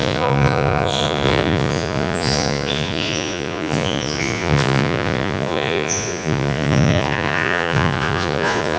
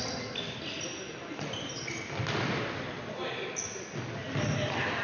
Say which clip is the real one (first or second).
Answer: second